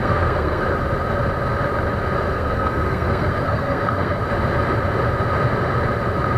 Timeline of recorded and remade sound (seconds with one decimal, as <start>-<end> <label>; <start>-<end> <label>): 0.0-0.6 remade; 0.6-2.3 recorded; 2.3-4.2 remade; 4.2-6.4 recorded